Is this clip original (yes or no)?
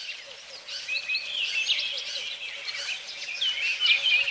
yes